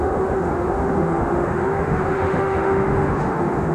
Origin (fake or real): fake